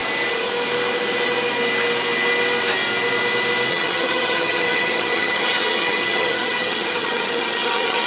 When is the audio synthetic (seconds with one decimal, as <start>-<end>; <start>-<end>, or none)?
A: 3.7-8.1